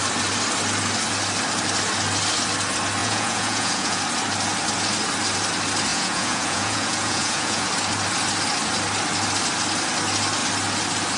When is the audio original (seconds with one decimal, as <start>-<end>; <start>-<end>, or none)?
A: 0.0-3.0; 4.0-5.9; 7.7-11.2